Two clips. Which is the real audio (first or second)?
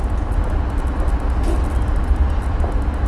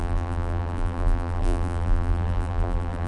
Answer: first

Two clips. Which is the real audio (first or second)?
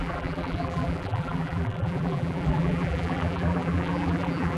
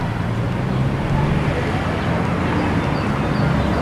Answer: second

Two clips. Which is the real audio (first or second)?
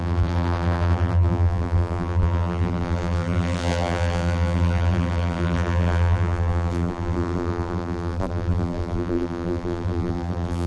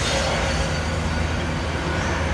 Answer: second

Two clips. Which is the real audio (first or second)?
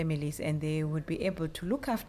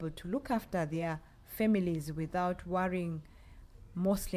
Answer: first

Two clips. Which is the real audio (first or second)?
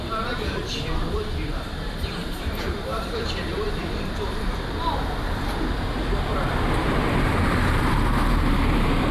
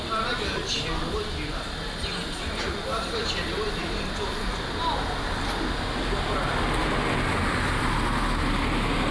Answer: second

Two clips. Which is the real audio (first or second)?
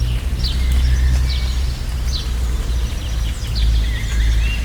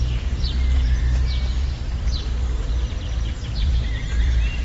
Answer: first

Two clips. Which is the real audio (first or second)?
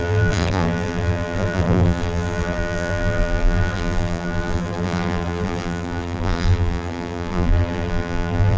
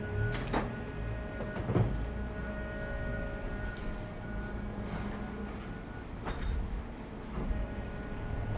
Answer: second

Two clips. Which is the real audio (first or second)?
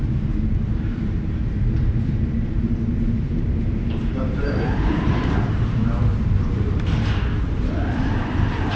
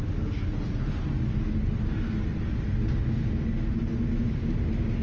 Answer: second